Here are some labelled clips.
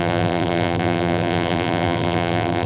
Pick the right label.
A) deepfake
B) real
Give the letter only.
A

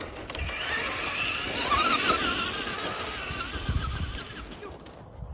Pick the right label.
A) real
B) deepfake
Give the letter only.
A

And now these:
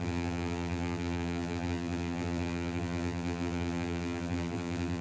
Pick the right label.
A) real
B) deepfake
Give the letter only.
B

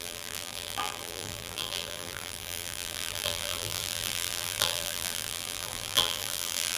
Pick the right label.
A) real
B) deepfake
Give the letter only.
B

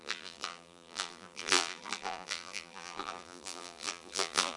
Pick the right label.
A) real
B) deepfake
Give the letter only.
B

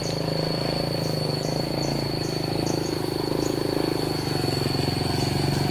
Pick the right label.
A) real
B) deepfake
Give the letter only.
A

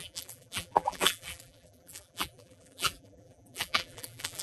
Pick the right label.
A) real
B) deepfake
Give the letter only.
B